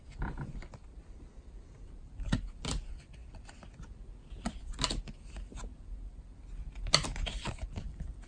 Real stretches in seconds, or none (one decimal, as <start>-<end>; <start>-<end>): 0.0-8.3